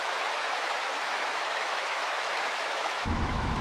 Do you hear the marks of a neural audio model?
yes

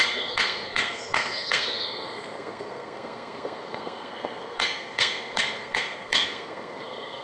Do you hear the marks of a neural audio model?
yes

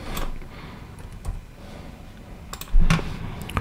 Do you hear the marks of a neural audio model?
no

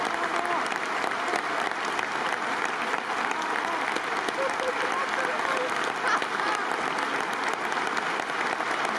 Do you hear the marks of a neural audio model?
no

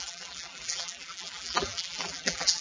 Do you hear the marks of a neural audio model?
yes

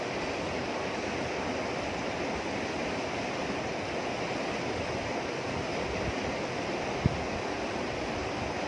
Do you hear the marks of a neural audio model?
no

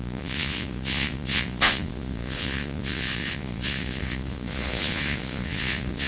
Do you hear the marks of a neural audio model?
yes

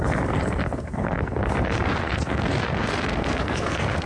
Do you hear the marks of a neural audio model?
yes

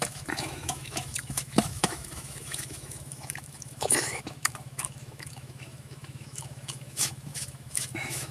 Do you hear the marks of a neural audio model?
yes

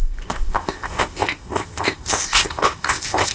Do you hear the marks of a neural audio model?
yes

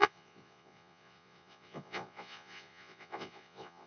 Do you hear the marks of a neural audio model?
yes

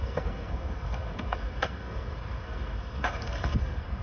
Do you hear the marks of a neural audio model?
yes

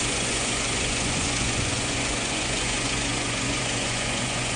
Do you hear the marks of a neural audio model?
yes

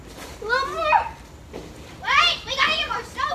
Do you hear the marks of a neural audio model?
no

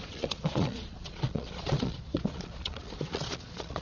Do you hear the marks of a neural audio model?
yes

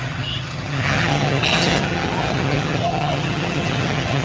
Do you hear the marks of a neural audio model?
yes